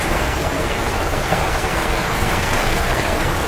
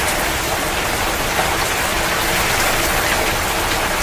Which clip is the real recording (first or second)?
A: second